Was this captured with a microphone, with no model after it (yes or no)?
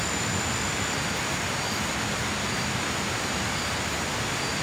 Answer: yes